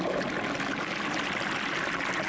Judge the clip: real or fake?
real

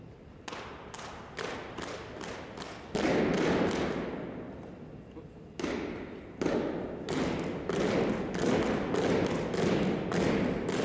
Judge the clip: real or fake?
real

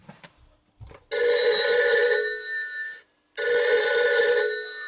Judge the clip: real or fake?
real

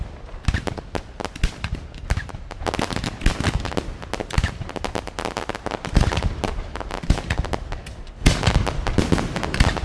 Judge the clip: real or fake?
real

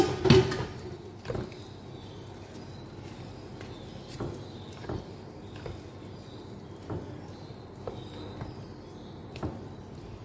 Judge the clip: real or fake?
real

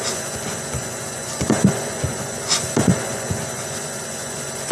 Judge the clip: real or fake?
fake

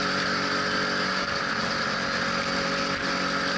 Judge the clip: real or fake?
real